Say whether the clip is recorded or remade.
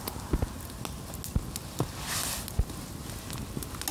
recorded